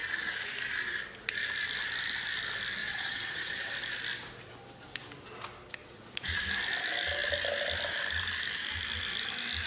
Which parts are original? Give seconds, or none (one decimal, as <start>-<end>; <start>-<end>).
0.0-2.8; 3.7-5.8; 6.4-9.7